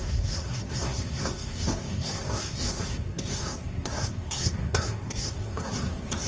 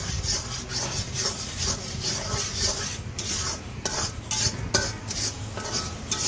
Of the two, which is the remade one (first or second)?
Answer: first